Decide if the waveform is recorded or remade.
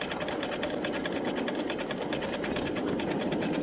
recorded